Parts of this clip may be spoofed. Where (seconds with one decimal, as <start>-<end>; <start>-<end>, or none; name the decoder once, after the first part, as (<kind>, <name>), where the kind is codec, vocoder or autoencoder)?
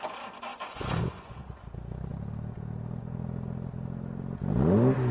0.5-1.4 (vocoder, Vocos)